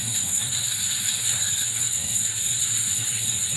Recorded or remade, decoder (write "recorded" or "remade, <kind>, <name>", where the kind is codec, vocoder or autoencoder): remade, codec, SNAC